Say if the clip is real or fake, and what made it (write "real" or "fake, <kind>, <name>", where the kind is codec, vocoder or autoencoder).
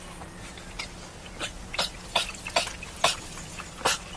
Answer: real